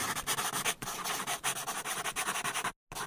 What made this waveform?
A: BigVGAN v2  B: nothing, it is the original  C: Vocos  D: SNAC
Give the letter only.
B